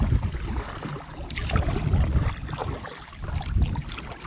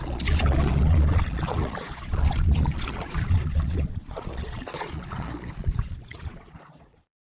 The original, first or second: first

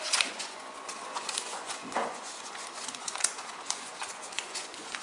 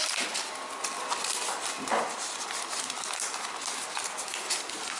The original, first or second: second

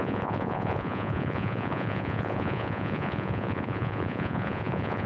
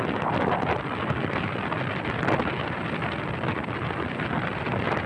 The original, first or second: second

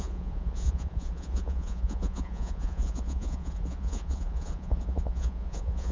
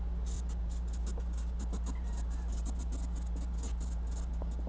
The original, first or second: second